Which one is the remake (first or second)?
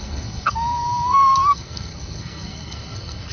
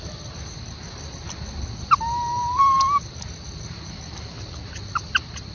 first